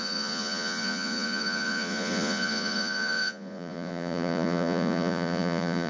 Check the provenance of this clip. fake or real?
fake